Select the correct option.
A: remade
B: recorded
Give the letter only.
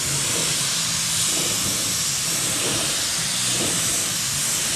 B